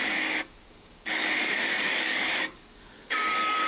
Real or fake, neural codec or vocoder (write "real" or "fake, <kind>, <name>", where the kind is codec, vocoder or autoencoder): fake, codec, DAC